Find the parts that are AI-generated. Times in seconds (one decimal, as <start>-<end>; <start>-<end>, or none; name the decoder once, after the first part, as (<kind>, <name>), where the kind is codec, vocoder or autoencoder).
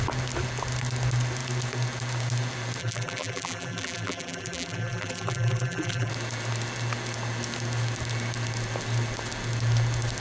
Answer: 2.8-6.1 (vocoder, BigVGAN v2)